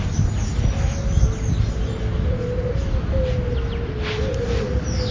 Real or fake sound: real